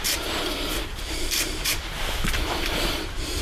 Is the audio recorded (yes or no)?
no